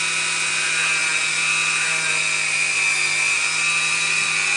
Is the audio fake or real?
real